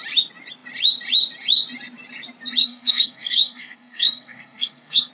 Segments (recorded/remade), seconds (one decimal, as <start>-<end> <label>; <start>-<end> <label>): 0.0-2.6 recorded; 2.6-5.1 remade